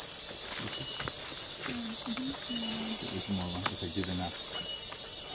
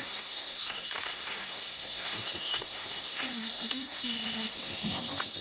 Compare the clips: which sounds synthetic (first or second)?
second